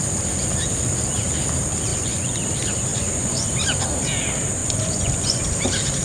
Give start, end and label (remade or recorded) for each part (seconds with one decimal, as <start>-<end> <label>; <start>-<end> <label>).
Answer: 0.0-1.9 recorded; 1.9-2.4 remade; 2.4-2.9 recorded; 2.9-3.5 remade; 3.5-4.6 recorded; 4.6-5.4 remade; 5.4-6.0 recorded